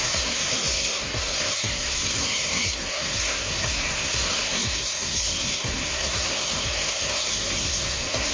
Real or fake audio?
fake